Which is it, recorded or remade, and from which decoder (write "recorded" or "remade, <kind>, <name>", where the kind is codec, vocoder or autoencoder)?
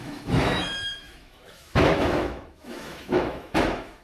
remade, autoencoder, DAC-VAE